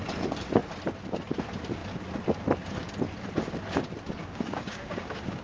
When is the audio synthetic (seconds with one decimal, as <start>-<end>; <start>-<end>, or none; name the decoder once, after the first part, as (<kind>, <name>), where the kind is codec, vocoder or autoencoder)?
4.2-5.4 (codec, DAC)